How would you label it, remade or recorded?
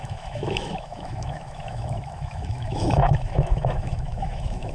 remade